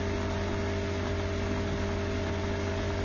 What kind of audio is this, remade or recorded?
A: recorded